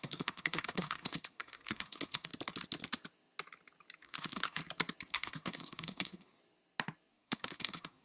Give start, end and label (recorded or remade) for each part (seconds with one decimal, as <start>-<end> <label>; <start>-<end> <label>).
0.0-2.3 remade; 2.3-4.0 recorded; 4.0-4.6 remade; 4.6-5.1 recorded; 5.1-6.4 remade; 6.4-7.1 recorded; 7.1-8.0 remade